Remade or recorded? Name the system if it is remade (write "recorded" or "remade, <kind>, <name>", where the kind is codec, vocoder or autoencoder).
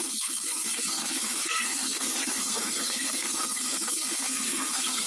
remade, codec, SNAC